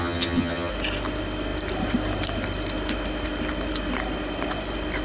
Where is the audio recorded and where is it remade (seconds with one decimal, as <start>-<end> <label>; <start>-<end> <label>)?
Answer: 0.0-0.7 remade; 0.7-5.0 recorded